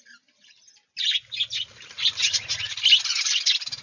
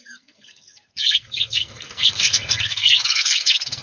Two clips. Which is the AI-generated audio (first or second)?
second